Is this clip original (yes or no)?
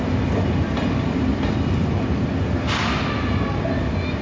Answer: yes